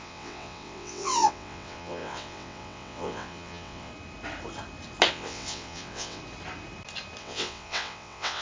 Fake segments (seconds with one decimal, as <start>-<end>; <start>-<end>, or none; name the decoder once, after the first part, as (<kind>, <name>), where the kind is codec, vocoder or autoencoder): 0.0-3.9 (vocoder, WaveNeXt); 5.1-6.2; 7.2-8.4